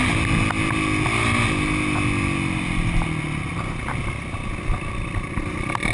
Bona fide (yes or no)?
yes